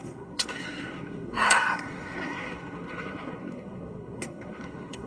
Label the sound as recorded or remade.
remade